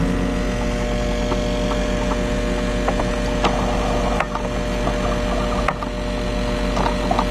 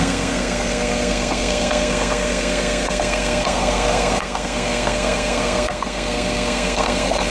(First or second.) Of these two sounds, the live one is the first